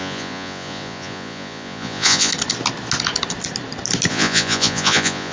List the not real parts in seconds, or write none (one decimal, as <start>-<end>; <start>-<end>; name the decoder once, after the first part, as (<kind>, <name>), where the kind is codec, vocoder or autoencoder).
0.0-2.3 (vocoder, Vocos); 4.1-5.3